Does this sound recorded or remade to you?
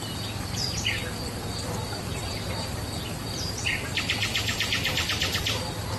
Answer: recorded